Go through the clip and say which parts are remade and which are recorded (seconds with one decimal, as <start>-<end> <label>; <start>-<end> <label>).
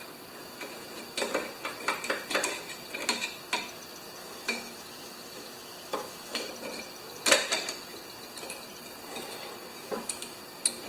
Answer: 0.0-4.2 recorded; 4.2-6.5 remade; 6.5-9.7 recorded; 9.7-10.4 remade; 10.4-10.9 recorded